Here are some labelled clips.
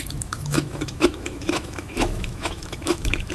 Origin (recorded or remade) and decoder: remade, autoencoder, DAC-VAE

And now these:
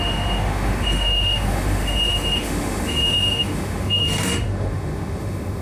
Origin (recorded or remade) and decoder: remade, autoencoder, DAC-VAE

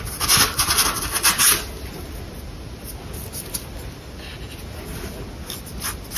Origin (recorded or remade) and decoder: recorded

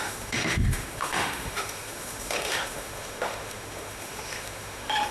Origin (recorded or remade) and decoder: remade, autoencoder, DAC-VAE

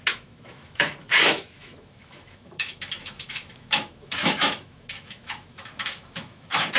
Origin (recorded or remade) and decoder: remade, autoencoder, DAC-VAE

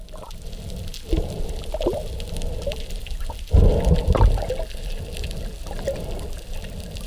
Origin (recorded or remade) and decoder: recorded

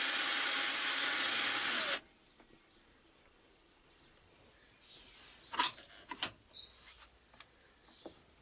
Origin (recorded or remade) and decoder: recorded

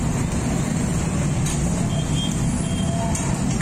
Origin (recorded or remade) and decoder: recorded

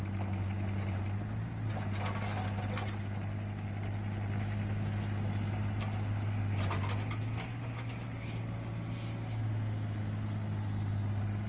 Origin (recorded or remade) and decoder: recorded